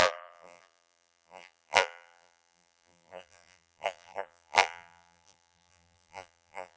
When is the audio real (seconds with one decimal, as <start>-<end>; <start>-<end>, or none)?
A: none